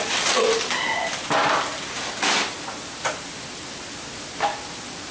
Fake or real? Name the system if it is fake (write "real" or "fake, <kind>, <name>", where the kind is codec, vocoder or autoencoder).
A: real